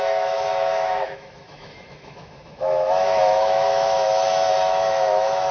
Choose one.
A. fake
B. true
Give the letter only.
A